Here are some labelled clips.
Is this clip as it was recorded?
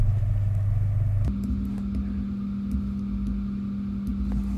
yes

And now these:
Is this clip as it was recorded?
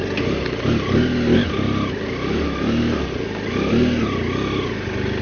yes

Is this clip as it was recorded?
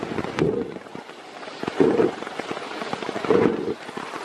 no